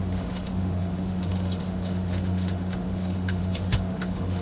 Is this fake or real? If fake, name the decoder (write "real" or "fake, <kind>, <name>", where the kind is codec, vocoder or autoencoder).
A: fake, autoencoder, DAC-VAE